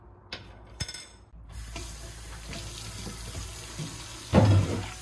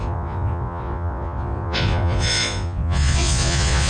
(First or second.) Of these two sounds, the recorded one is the first